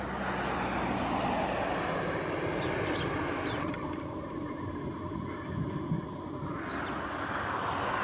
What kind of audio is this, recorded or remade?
recorded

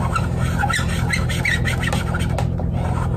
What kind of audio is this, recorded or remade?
recorded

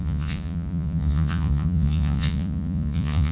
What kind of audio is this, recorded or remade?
remade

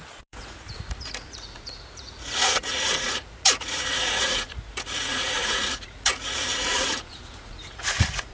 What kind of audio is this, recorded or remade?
remade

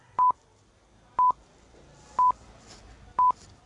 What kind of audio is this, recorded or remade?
recorded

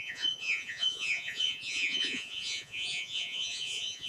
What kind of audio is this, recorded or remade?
remade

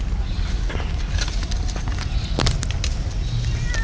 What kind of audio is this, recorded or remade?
recorded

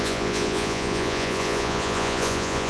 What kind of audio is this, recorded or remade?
remade